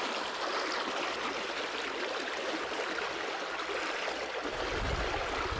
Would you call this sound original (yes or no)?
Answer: yes